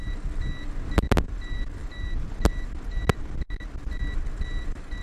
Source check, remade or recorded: recorded